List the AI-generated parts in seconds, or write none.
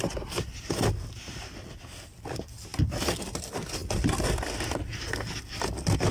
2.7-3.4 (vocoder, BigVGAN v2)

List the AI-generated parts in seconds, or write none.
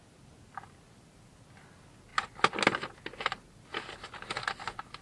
none